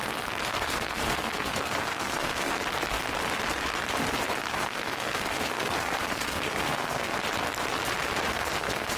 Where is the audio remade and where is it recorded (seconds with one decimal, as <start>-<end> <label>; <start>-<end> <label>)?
0.0-0.5 recorded; 0.5-2.6 remade; 2.6-4.5 recorded; 4.5-7.1 remade; 7.1-8.3 recorded; 8.3-9.0 remade